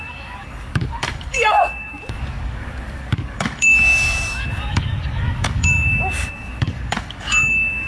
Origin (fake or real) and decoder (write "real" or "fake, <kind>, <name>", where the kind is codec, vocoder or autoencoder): fake, codec, DAC